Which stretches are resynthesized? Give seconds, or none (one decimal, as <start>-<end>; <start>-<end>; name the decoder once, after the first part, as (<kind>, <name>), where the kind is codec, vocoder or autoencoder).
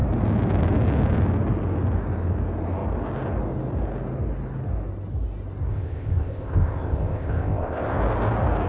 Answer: 5.7-8.0 (codec, ZipCodec)